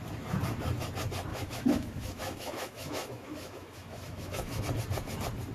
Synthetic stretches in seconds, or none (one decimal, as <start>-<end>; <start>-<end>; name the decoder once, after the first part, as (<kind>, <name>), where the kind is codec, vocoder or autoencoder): 1.3-4.6 (autoencoder, DAC-VAE)